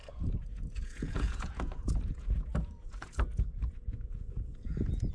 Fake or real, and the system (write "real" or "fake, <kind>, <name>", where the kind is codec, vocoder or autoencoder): fake, vocoder, Vocos